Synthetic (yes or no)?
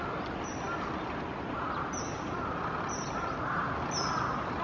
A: no